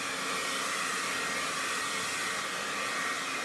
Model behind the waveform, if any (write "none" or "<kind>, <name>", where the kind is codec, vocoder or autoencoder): none